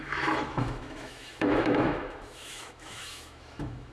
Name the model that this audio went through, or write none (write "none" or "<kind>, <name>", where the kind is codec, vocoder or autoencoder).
autoencoder, DAC-VAE